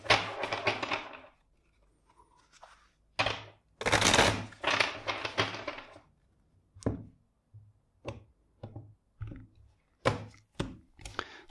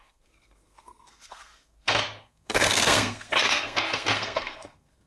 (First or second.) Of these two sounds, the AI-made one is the second